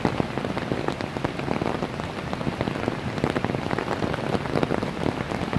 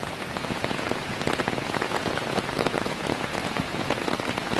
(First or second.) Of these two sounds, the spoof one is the second